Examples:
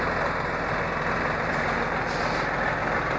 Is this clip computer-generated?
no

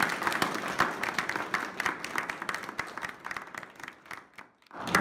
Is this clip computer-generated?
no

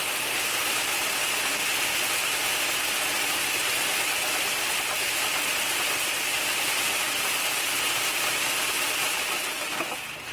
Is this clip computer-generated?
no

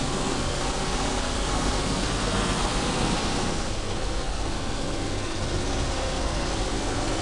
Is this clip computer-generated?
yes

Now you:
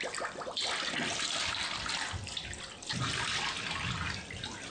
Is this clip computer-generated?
no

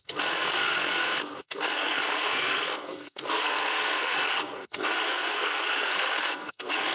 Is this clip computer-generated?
yes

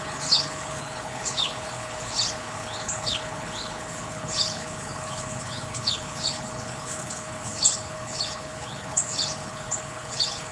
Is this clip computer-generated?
yes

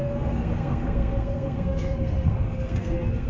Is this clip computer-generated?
yes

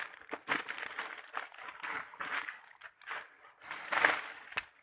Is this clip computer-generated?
no